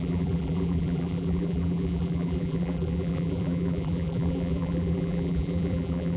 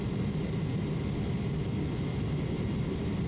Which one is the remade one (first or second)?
first